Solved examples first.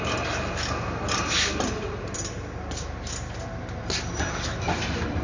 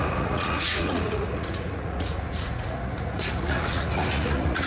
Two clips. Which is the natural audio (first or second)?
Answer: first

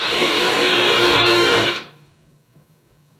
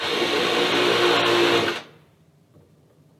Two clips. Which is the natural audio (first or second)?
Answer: second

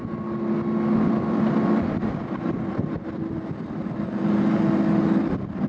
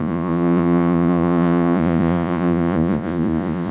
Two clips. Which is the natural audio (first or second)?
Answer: first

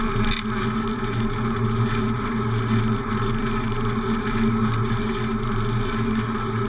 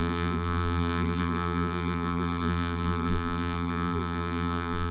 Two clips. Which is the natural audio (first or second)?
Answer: first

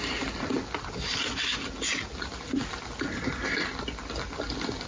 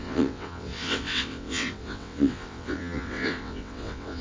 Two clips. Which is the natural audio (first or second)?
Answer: first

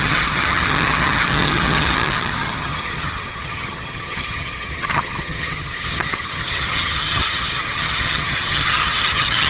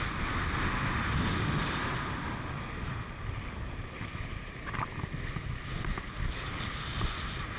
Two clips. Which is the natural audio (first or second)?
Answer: second